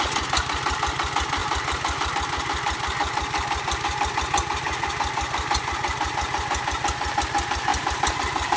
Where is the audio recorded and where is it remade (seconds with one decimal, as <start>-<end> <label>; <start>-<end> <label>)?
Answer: 0.0-1.4 recorded; 1.4-2.1 remade; 2.1-7.7 recorded; 7.7-8.6 remade